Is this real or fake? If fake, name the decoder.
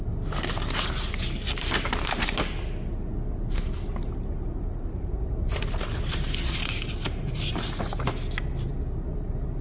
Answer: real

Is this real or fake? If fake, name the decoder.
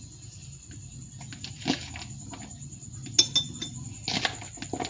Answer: real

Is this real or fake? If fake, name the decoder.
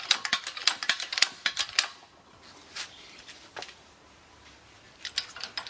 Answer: fake, vocoder, BigVGAN v2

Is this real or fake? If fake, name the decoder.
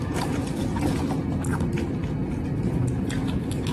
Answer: real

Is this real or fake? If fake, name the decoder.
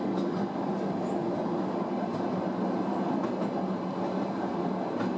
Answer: real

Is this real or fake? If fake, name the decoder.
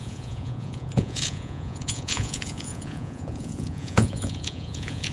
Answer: fake, vocoder, Vocos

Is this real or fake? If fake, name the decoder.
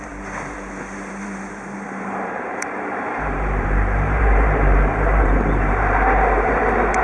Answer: fake, vocoder, BigVGAN v2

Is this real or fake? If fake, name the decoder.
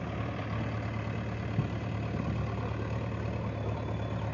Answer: real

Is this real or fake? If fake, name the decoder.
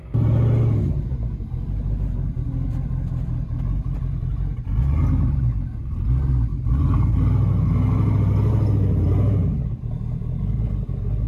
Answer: real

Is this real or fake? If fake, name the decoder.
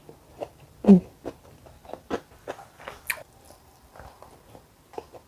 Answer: real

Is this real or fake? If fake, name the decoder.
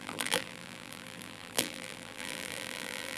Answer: fake, vocoder, BigVGAN v2